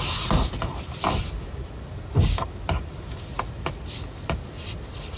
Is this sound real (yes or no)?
yes